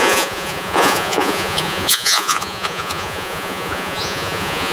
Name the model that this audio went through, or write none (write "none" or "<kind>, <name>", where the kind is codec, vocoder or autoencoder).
vocoder, Vocos